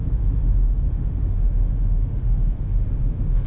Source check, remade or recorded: remade